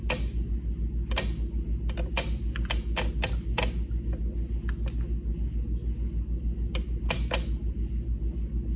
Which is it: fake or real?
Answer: real